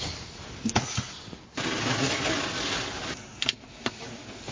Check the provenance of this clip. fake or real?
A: real